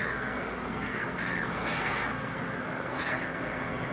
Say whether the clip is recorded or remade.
remade